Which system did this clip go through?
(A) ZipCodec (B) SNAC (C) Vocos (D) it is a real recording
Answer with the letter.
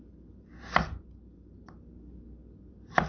D